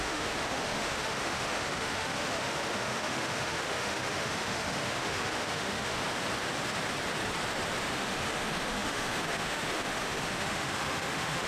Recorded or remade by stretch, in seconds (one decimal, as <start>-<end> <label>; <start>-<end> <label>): 0.0-6.0 remade; 6.0-7.9 recorded; 7.9-11.5 remade